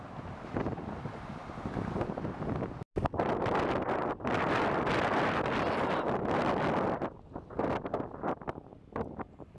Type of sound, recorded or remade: recorded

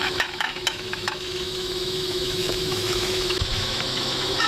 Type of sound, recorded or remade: remade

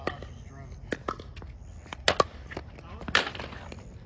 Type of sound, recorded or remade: recorded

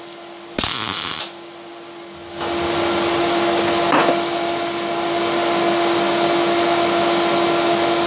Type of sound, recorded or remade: recorded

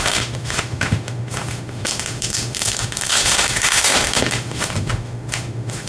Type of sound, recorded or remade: remade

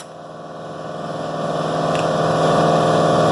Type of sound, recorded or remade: recorded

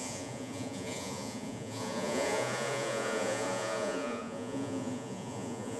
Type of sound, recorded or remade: remade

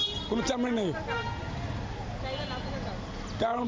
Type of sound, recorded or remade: recorded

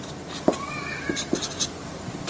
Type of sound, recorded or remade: remade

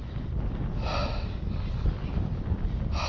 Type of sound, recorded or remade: recorded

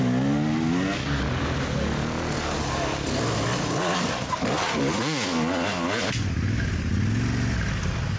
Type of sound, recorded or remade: recorded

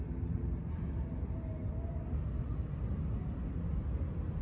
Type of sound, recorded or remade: recorded